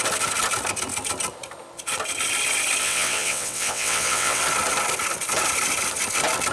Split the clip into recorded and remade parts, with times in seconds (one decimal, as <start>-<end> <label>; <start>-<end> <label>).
0.0-2.8 recorded; 2.8-4.4 remade; 4.4-6.5 recorded